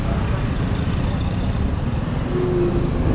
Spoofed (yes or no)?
no